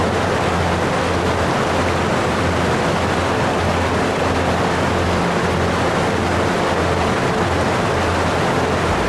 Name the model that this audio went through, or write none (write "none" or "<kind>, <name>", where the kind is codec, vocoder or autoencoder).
none